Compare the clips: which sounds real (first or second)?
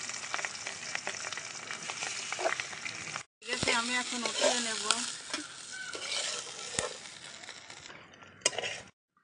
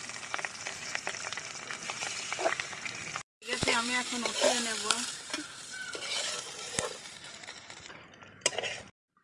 first